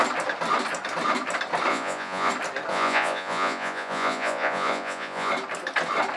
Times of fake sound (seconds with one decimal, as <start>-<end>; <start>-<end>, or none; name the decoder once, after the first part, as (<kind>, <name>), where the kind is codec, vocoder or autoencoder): 1.7-2.3 (vocoder, Vocos); 2.7-5.3